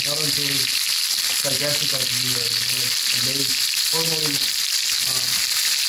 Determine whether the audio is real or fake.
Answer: real